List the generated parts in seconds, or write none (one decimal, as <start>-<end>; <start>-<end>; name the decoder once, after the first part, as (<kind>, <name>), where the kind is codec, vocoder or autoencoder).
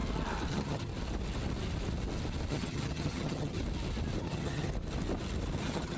0.5-0.9 (vocoder, HiFi-GAN); 2.5-3.6; 4.2-4.7; 5.6-6.0